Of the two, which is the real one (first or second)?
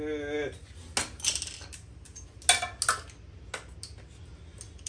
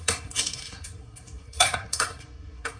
first